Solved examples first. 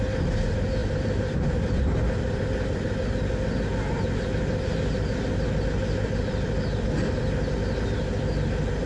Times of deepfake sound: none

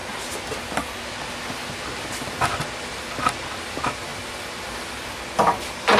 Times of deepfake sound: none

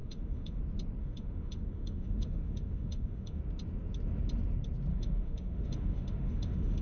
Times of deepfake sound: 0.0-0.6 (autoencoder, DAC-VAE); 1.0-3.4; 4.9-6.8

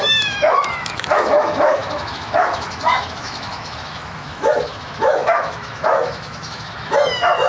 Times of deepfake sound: 0.0-7.5 (autoencoder, DAC-VAE)

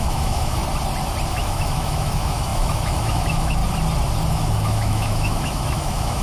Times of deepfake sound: 0.0-0.6 (autoencoder, DAC-VAE); 1.3-3.6; 4.3-6.2